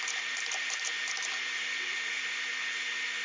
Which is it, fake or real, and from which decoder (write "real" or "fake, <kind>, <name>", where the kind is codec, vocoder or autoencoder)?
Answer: real